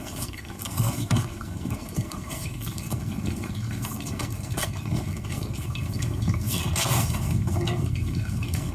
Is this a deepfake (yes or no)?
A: yes